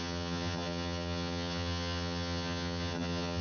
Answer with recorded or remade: remade